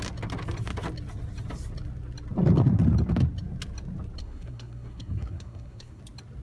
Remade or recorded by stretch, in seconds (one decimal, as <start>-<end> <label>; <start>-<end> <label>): 0.0-4.2 recorded; 4.2-6.0 remade; 6.0-6.4 recorded